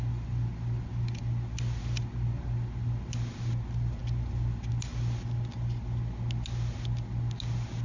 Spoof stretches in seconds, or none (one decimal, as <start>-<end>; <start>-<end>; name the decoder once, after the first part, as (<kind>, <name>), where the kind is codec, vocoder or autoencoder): none